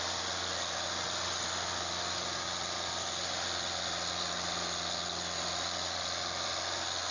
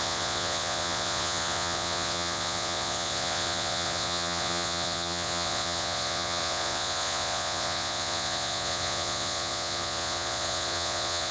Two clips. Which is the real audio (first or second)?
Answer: first